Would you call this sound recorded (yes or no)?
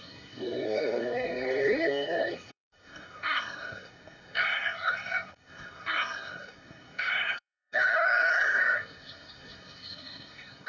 no